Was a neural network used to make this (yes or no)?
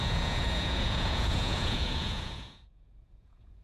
yes